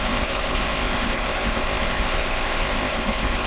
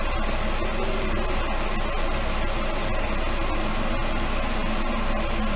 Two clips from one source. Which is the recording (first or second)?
second